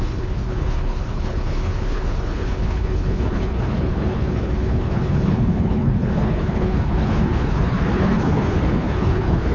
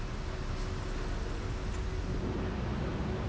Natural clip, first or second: second